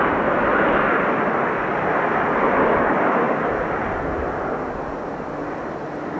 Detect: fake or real real